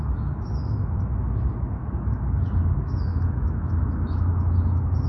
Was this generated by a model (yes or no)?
yes